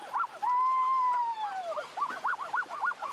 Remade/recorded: remade